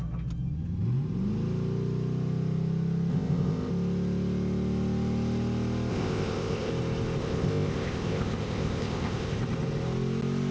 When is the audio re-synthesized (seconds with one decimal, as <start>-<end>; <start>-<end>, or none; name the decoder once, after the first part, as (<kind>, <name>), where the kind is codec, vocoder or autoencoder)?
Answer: 3.1-3.7 (codec, ZipCodec); 5.9-6.7; 7.2-9.4